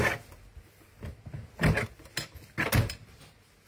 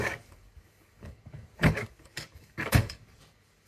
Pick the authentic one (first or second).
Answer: first